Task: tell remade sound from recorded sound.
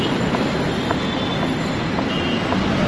recorded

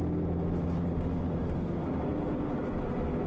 recorded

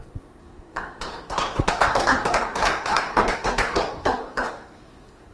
remade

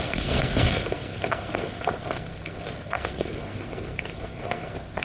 remade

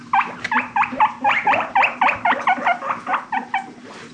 remade